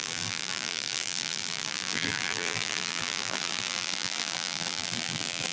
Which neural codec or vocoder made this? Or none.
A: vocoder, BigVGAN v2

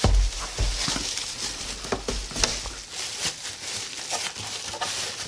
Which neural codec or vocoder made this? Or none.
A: none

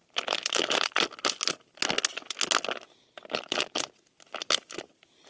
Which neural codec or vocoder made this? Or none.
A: none